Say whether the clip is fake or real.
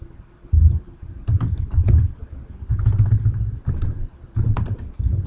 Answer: real